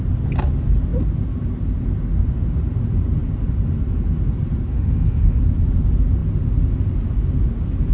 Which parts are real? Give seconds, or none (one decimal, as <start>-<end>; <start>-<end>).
0.0-4.7; 5.4-7.9

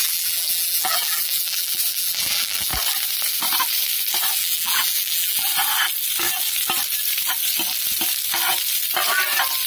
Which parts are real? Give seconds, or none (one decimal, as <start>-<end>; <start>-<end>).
2.7-4.4; 5.5-9.7

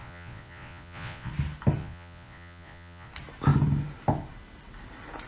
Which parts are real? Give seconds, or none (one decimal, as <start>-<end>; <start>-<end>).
1.3-1.8; 3.1-5.3

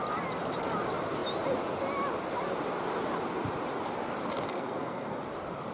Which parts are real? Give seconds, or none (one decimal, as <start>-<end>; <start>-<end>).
0.0-4.5; 5.2-5.7

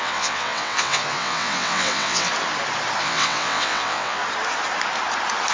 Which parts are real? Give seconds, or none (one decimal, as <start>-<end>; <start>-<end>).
2.3-3.0; 4.2-5.5

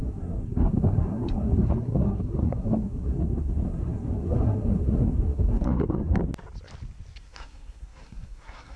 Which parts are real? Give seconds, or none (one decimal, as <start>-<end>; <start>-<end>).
6.2-7.2